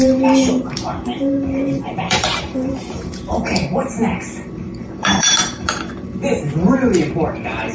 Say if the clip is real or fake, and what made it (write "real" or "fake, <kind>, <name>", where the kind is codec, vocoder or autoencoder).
fake, vocoder, BigVGAN v2